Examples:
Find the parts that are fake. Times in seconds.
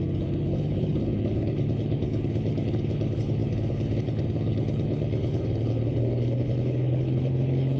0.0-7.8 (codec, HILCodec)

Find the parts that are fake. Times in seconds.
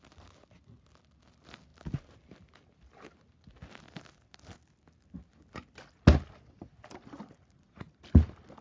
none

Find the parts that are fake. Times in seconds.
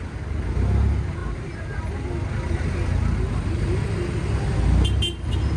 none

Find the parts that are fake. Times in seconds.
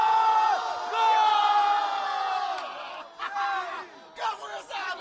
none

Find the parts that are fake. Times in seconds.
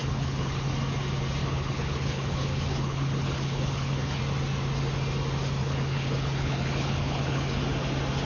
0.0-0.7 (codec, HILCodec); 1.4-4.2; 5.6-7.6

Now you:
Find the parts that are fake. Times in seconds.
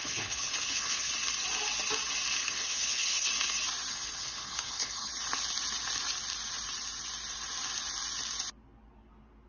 0.0-1.1 (codec, HILCodec); 2.4-3.3; 3.9-5.1